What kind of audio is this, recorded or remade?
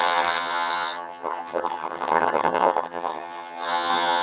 remade